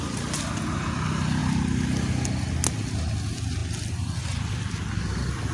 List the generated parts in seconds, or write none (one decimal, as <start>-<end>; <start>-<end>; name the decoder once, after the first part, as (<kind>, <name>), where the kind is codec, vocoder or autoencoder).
none